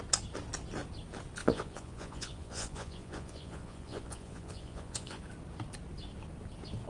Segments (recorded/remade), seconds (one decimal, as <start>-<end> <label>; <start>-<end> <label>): 0.0-1.4 recorded; 1.4-5.2 remade; 5.2-6.9 recorded